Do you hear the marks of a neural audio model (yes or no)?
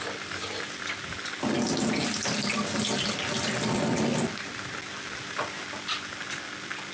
no